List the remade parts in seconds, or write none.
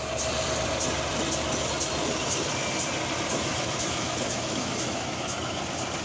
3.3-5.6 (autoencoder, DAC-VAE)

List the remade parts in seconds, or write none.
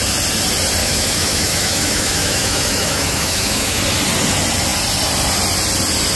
0.8-3.8 (autoencoder, DAC-VAE)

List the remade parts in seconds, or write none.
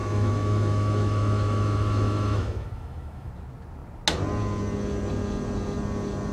0.0-3.3 (autoencoder, DAC-VAE)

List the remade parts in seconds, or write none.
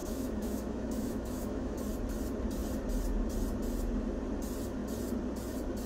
0.0-1.8 (autoencoder, DAC-VAE)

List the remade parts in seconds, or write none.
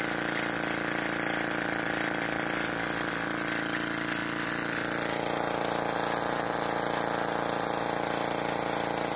none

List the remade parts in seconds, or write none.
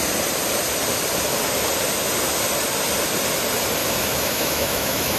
3.8-5.2 (autoencoder, DAC-VAE)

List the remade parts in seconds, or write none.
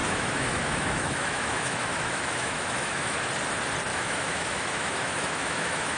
0.0-3.3 (autoencoder, DAC-VAE); 3.9-6.0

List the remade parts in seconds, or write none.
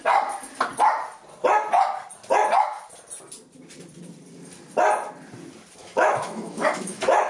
5.8-7.3 (autoencoder, DAC-VAE)